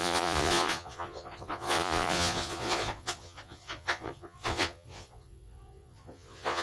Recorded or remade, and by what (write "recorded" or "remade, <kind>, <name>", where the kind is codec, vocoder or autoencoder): remade, vocoder, Vocos